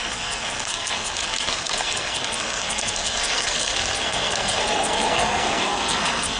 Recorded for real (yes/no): no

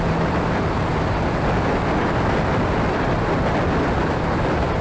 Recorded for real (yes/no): yes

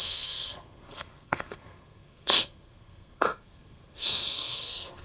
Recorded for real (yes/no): no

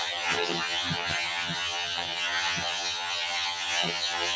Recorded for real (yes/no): no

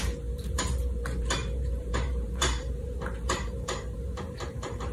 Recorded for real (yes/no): no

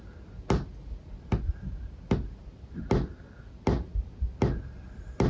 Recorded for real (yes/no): yes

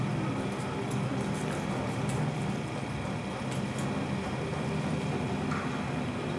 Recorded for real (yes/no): yes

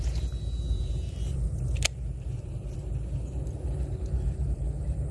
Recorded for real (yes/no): no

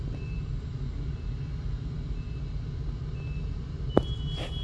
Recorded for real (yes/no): yes